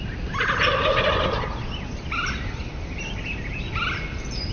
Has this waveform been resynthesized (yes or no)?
no